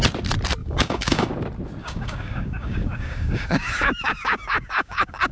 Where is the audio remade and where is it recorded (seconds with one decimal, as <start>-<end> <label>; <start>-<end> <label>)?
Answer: 0.0-0.6 recorded; 0.6-1.3 remade; 1.3-1.8 recorded; 1.8-5.3 remade